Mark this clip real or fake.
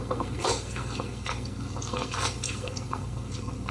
fake